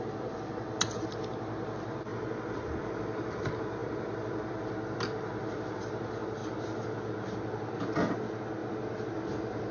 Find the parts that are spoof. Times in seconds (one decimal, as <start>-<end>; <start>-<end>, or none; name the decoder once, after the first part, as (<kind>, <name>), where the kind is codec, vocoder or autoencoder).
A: none